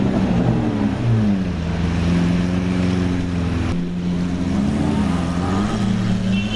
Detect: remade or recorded recorded